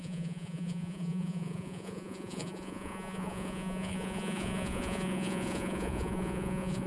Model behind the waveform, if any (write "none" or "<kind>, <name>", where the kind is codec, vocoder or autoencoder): vocoder, Vocos